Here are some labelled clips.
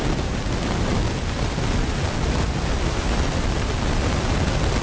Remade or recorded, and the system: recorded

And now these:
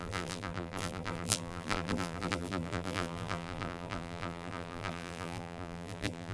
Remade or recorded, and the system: remade, vocoder, BigVGAN v2